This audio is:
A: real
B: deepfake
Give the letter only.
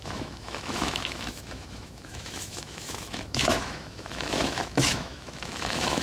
B